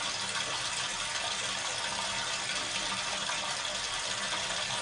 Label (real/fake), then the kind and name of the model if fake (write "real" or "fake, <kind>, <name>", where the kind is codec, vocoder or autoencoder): fake, vocoder, BigVGAN v2